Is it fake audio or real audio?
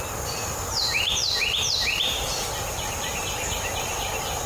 real